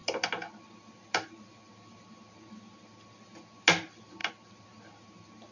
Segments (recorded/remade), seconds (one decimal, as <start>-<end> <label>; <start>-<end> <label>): 0.0-5.5 recorded